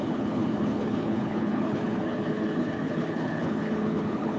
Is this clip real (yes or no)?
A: no